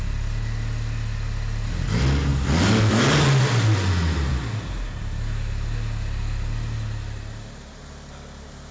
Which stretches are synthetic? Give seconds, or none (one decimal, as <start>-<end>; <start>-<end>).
none